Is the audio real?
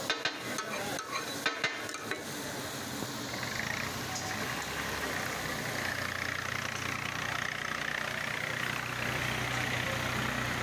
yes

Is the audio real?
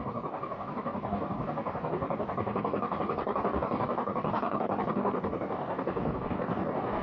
no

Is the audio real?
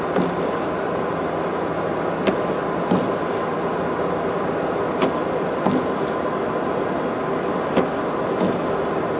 yes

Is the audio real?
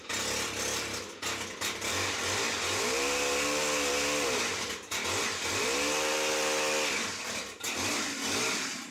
yes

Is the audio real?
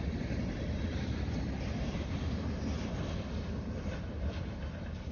yes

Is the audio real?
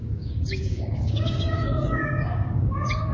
no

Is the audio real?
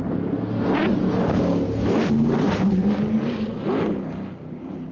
yes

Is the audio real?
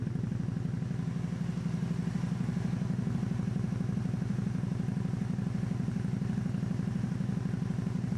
yes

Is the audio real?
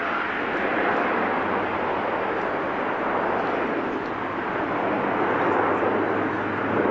yes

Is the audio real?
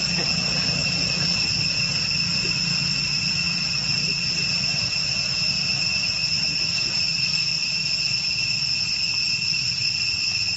yes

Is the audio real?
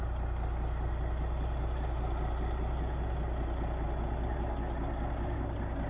yes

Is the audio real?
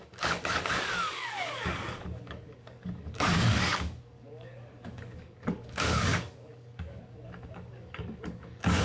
no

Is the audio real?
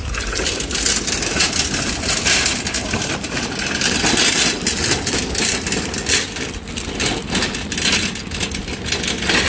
yes